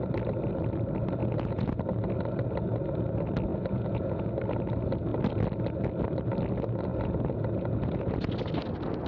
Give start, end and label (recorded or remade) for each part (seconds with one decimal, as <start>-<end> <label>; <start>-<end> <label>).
0.0-1.2 recorded; 1.2-1.8 remade; 1.8-3.5 recorded; 3.5-4.3 remade; 4.3-6.9 recorded; 6.9-8.3 remade; 8.3-9.1 recorded